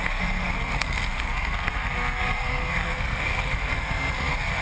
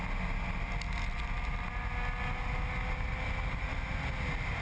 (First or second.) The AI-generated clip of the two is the first